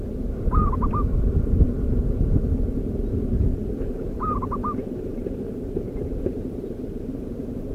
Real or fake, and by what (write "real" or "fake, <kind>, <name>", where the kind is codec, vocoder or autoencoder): fake, vocoder, BigVGAN v2